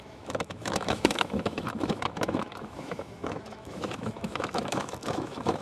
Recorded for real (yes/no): no